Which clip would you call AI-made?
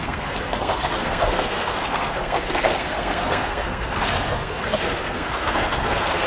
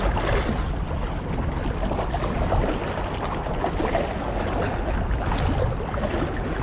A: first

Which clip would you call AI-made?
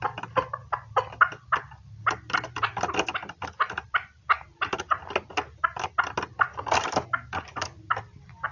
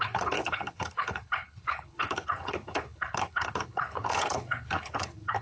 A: second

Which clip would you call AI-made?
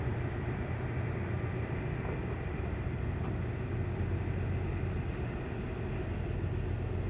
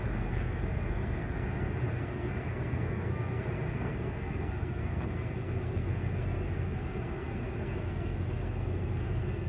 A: second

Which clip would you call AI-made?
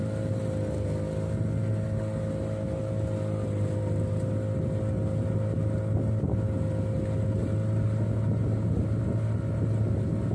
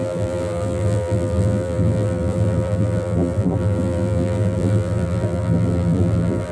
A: second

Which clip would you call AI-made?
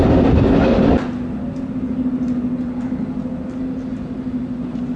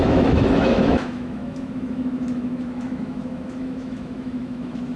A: second